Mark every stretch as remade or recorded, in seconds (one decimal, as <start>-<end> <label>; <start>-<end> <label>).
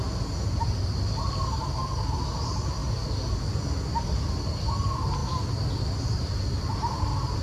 0.0-7.4 recorded